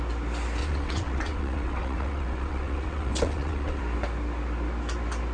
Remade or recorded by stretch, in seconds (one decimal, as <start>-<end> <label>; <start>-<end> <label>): 0.0-0.6 recorded; 0.6-3.8 remade; 3.8-5.3 recorded

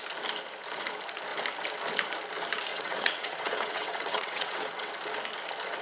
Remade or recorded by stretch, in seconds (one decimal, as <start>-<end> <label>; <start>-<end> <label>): 0.0-2.7 recorded; 2.7-4.9 remade; 4.9-5.8 recorded